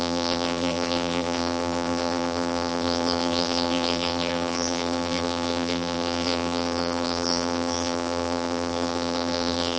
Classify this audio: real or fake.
fake